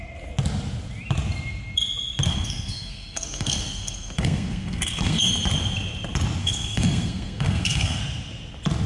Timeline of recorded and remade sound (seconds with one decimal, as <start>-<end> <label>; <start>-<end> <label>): 0.0-2.3 recorded; 2.3-5.3 remade; 5.3-6.4 recorded; 6.4-8.0 remade; 8.0-8.9 recorded